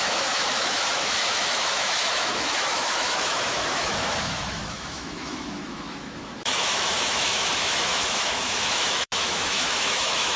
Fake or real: fake